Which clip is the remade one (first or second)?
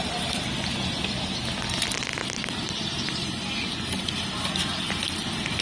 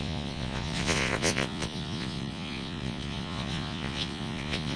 second